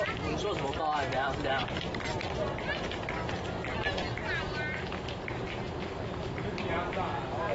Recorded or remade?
recorded